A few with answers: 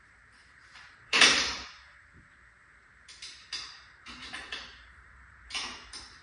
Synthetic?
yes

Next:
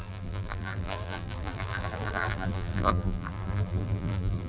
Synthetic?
yes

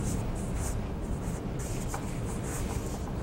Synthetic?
yes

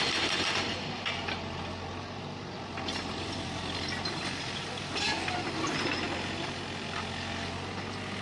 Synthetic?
yes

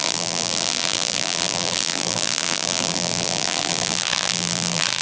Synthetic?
yes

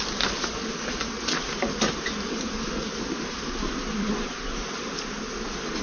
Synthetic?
no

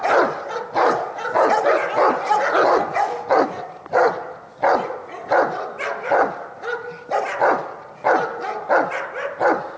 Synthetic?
no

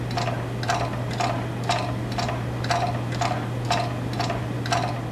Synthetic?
no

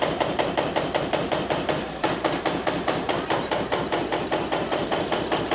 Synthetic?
yes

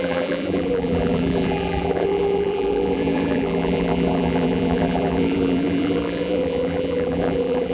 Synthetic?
yes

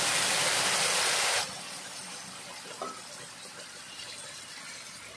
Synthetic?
yes